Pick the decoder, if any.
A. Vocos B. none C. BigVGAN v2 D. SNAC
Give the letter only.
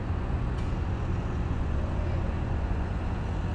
A